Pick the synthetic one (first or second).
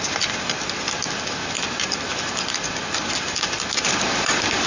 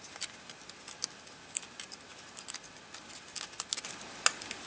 first